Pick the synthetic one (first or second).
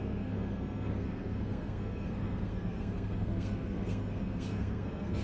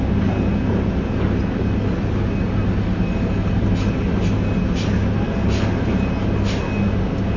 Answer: first